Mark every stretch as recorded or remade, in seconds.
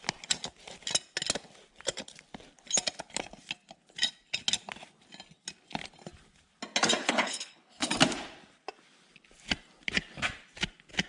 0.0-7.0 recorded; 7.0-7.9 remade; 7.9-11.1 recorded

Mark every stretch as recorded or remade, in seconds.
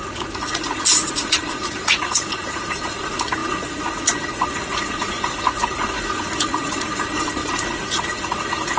0.0-8.8 remade